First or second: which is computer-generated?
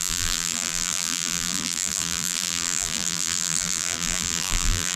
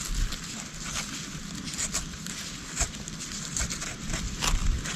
first